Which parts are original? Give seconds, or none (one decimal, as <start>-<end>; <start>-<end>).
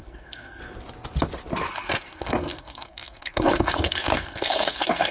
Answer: 0.6-1.7